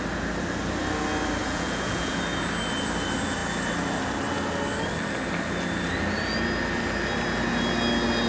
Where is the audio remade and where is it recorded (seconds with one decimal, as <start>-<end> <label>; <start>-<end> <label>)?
0.0-1.4 recorded; 1.4-2.2 remade; 2.2-8.3 recorded